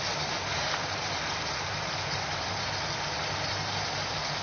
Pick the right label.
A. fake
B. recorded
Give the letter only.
B